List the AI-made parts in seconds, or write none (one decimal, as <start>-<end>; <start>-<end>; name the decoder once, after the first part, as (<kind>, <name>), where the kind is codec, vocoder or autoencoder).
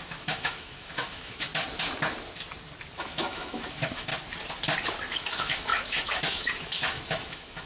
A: 0.0-1.5 (autoencoder, DAC-VAE); 3.0-4.1; 5.2-7.7